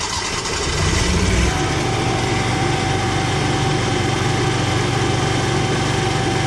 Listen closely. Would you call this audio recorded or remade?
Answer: recorded